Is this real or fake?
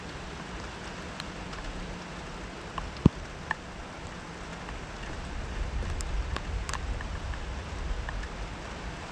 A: real